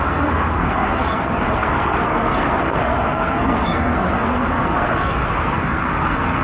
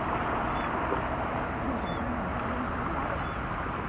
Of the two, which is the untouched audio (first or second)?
second